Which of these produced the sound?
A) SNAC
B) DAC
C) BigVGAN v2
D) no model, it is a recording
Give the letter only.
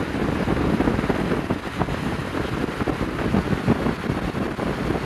D